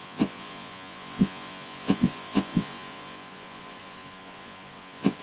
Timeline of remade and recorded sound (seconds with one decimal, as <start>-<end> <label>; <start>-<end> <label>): 0.0-5.2 remade